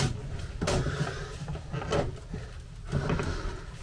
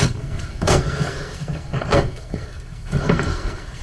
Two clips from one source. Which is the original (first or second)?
first